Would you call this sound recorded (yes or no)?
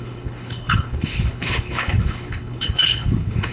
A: no